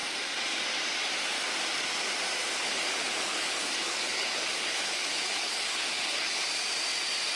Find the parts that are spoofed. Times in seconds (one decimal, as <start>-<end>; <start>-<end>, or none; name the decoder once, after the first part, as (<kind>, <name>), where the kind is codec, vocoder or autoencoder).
2.6-6.4 (codec, HILCodec)